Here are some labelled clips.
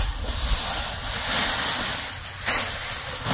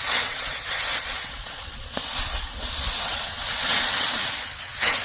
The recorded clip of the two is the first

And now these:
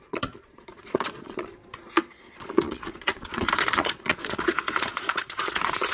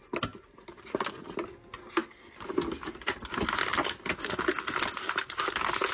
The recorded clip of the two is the second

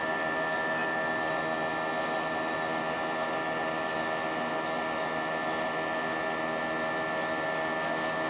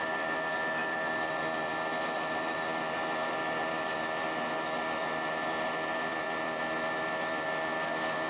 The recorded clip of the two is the first